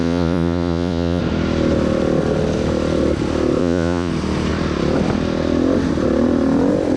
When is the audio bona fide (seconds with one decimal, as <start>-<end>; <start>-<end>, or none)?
1.2-3.6; 4.1-7.0